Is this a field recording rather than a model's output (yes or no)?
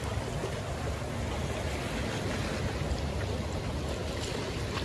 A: yes